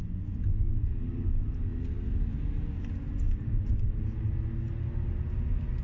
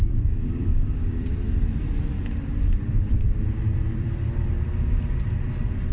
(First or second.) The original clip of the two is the first